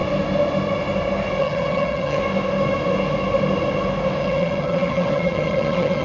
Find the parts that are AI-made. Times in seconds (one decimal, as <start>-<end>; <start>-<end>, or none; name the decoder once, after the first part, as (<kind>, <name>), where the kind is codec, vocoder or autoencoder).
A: 1.4-2.2 (vocoder, HiFi-GAN); 4.2-6.0